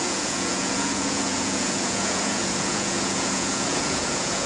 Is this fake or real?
fake